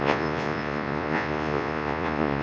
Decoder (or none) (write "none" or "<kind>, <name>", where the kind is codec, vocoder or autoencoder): vocoder, Vocos